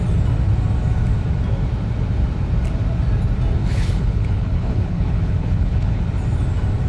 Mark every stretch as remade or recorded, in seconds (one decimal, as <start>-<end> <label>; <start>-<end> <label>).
0.0-3.6 recorded; 3.6-6.0 remade; 6.0-6.9 recorded